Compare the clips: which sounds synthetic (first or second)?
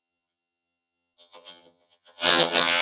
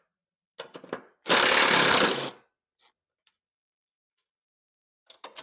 first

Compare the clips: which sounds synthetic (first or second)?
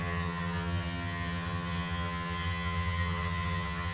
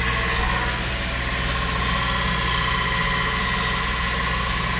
first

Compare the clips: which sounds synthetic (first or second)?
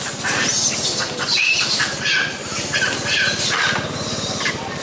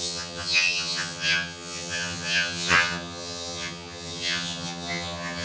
second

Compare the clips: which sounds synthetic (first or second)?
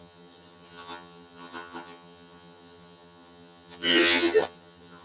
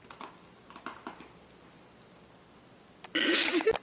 first